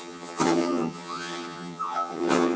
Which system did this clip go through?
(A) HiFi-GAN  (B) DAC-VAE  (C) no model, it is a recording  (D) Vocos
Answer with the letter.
A